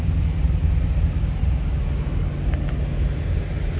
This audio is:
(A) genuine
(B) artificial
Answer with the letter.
A